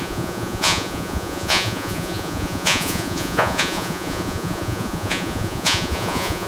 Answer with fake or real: fake